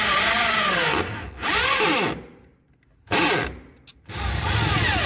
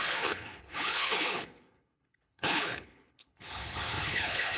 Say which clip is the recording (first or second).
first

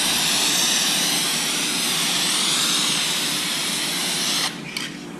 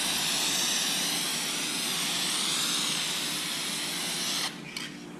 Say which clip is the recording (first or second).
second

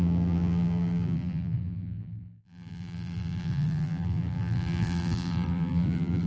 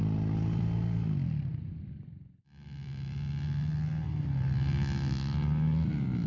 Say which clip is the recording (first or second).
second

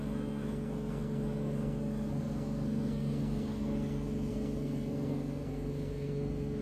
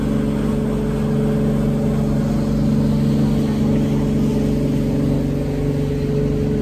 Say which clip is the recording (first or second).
second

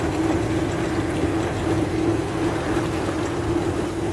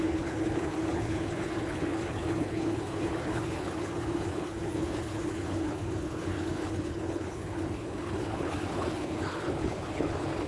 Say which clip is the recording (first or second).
first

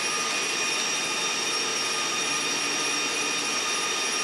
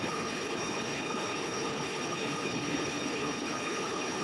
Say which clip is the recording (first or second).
first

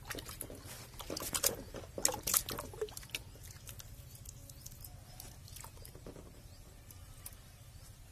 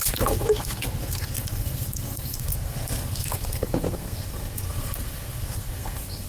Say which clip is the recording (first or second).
first